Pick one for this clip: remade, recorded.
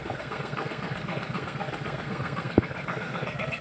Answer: remade